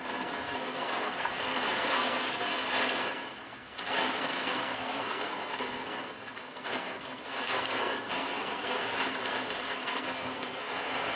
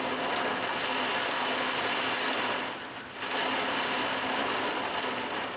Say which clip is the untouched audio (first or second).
second